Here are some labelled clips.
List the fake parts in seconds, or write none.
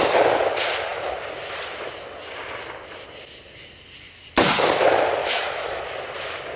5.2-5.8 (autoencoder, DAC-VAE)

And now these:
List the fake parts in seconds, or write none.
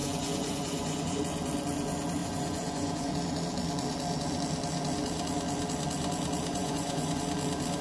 0.0-1.2 (vocoder, Vocos); 2.2-3.1; 6.5-7.2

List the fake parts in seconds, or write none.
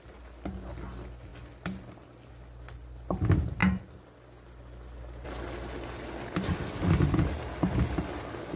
none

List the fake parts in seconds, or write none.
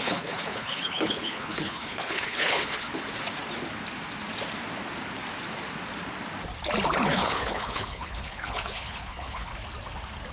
0.0-2.9 (codec, HILCodec); 7.1-9.5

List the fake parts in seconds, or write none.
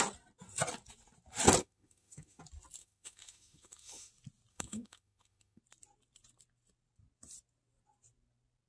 1.6-2.4 (autoencoder, DAC-VAE); 2.8-4.1; 4.5-5.6